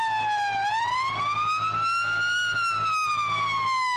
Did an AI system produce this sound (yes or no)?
no